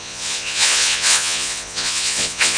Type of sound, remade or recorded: remade